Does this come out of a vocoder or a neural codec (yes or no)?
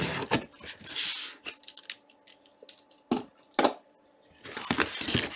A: no